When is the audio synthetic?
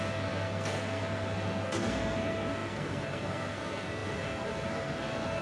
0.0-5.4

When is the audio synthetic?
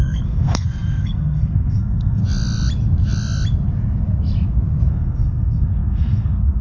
0.0-2.2; 4.9-6.6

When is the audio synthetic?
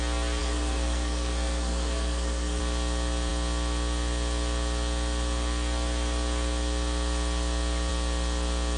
0.4-2.6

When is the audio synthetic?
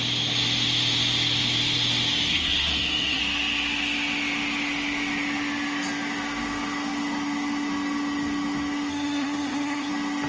2.3-3.2; 8.9-9.9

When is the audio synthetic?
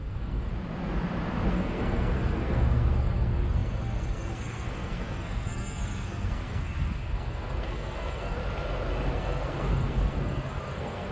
0.0-0.5; 1.5-8.4; 9.1-11.1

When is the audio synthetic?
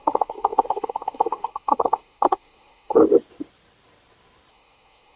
0.0-3.0; 4.5-5.2